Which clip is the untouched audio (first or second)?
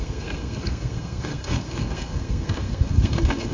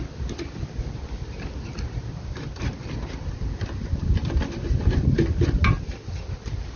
second